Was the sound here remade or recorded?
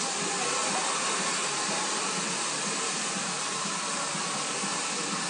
recorded